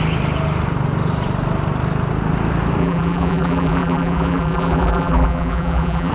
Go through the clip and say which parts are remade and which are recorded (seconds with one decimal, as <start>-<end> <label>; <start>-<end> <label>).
0.0-2.8 recorded; 2.8-6.1 remade